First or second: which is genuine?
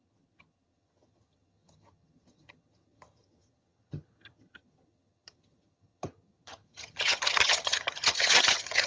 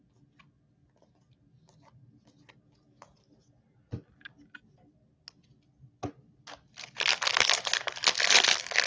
second